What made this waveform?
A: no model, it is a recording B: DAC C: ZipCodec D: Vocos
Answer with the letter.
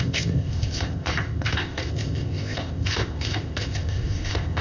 C